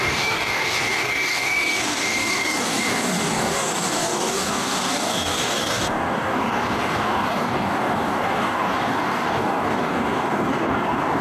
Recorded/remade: remade